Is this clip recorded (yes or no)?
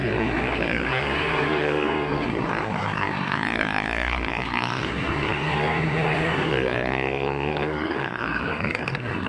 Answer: no